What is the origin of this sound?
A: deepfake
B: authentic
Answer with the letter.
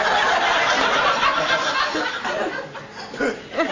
B